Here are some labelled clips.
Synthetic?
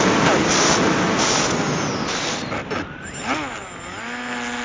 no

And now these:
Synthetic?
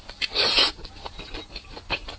no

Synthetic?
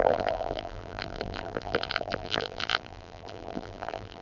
yes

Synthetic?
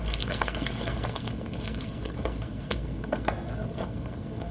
yes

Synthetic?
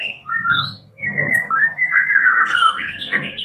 yes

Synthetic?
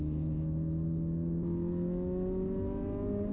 no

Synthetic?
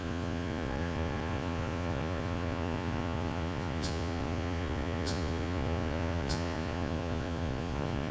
yes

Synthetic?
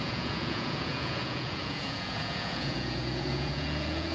yes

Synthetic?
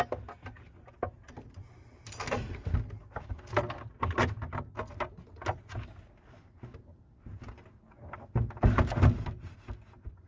no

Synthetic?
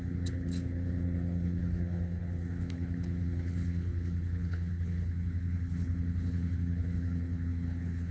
yes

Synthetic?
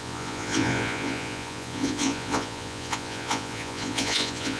yes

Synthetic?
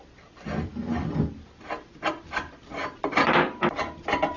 yes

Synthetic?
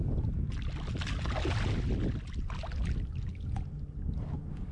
no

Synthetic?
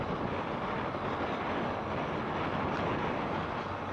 no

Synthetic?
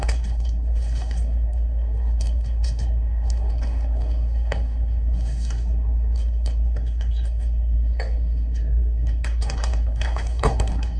yes